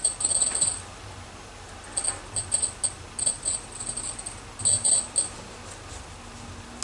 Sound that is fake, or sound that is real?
real